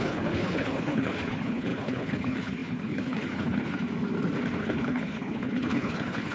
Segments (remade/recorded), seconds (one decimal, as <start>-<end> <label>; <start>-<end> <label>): 0.0-3.7 remade; 3.7-4.6 recorded; 4.6-6.3 remade